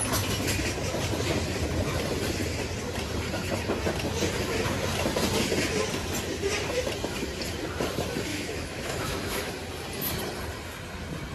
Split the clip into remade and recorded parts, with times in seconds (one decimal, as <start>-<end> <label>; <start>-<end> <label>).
0.0-8.3 recorded; 8.3-9.5 remade; 9.5-11.3 recorded